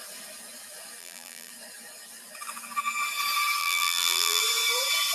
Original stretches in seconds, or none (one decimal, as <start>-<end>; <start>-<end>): 0.0-1.0; 1.5-3.6; 4.4-5.1